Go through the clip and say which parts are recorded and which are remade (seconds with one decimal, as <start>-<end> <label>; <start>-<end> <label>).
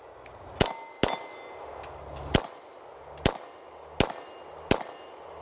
0.0-5.4 recorded